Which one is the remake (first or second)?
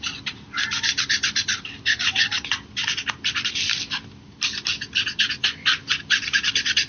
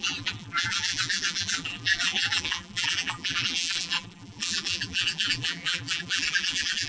second